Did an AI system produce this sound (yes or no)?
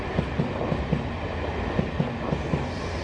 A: no